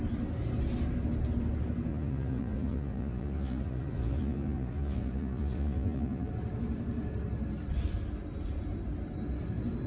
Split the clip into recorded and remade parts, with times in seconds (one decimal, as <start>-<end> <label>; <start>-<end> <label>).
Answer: 0.0-1.9 recorded; 1.9-6.3 remade; 6.3-9.9 recorded